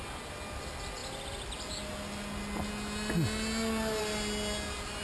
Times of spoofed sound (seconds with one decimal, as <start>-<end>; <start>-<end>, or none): none